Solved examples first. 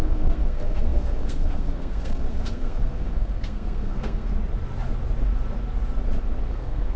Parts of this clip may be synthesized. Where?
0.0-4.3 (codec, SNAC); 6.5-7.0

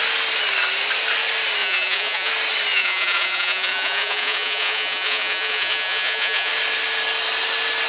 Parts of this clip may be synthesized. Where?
1.6-2.3 (vocoder, Vocos); 2.7-6.5

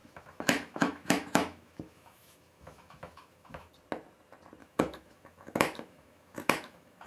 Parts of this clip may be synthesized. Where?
0.0-3.7 (autoencoder, DAC-VAE); 4.6-7.1

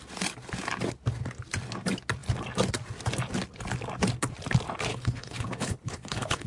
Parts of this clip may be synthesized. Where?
4.9-6.5 (codec, HILCodec)